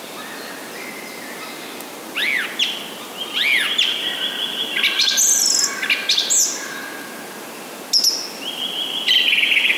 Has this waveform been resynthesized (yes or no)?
no